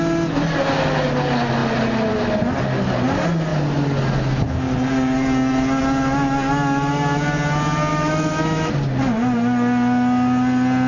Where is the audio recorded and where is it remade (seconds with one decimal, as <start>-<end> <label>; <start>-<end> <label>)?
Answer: 0.0-7.9 recorded; 7.9-8.7 remade; 8.7-10.9 recorded